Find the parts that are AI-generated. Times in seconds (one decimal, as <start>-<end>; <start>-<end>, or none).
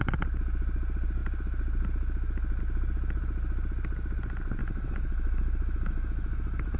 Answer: 4.6-6.8